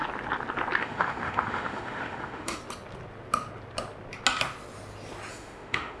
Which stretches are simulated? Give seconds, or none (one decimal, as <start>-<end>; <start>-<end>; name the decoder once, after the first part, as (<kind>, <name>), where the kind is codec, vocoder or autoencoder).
0.8-2.6 (autoencoder, DAC-VAE); 5.3-6.0